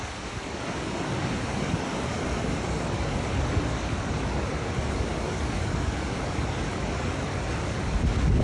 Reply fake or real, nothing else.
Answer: fake